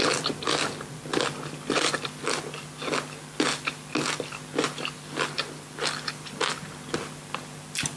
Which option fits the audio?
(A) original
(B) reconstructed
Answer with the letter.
A